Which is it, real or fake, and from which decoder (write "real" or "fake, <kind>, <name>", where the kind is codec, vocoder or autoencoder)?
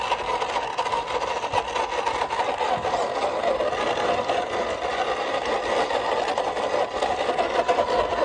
real